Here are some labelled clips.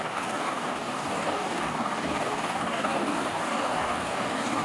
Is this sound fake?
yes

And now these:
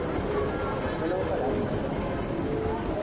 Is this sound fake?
no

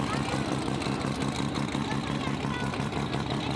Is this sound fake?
no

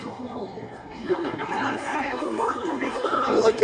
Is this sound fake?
yes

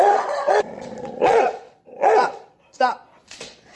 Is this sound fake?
yes